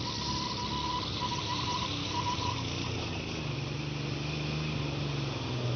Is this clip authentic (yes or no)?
yes